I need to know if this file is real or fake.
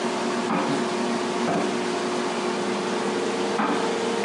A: real